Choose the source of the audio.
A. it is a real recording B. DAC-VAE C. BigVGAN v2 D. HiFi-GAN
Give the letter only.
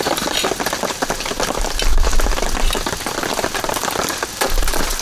A